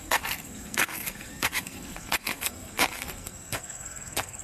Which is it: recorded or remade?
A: remade